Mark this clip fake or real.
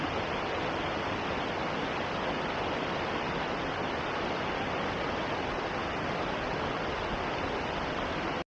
real